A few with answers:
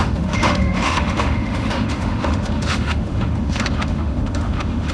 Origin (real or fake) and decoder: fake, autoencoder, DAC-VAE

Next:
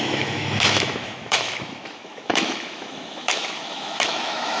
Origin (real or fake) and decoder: fake, autoencoder, DAC-VAE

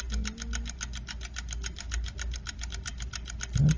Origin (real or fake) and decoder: real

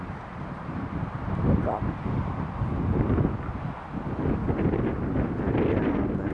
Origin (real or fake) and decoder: real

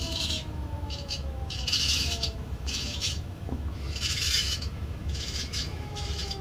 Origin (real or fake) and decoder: fake, autoencoder, DAC-VAE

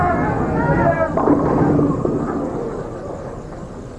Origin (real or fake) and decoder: real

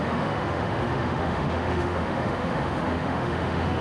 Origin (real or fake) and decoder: fake, autoencoder, DAC-VAE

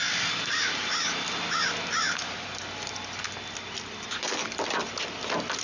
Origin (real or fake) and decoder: real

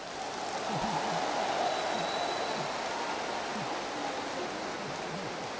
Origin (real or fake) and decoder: real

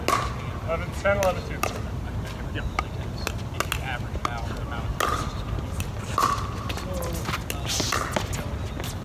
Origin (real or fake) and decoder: real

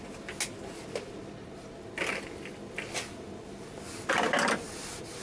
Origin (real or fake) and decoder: real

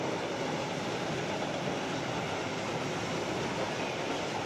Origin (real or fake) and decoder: real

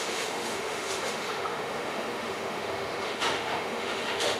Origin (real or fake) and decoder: fake, autoencoder, DAC-VAE